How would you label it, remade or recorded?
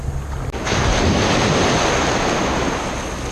recorded